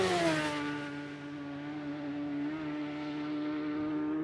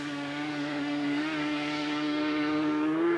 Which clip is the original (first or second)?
first